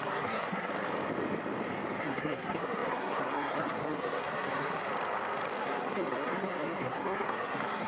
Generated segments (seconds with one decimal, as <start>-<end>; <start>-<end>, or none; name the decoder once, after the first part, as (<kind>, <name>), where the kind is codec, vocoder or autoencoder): 0.0-0.7 (codec, SNAC); 2.0-4.8; 5.6-7.9